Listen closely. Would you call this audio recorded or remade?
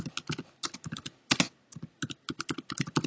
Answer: recorded